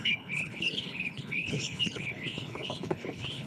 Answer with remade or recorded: remade